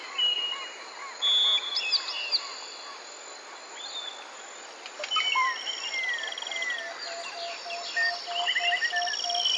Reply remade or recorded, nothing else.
recorded